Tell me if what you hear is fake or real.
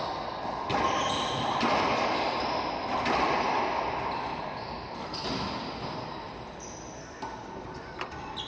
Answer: real